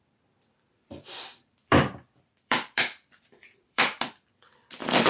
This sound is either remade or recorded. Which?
remade